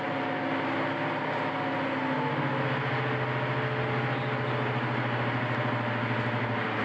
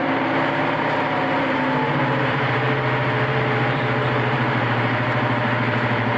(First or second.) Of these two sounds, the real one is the first